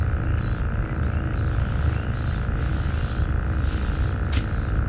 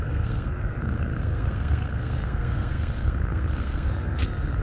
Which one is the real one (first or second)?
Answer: first